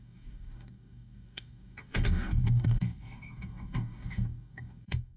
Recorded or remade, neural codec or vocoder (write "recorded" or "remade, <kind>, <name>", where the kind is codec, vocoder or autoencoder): remade, codec, DAC